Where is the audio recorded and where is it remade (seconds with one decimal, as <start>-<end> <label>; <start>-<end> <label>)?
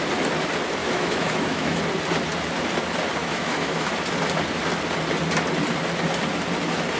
0.0-0.8 recorded; 0.8-1.8 remade; 1.8-3.2 recorded; 3.2-3.9 remade; 3.9-7.0 recorded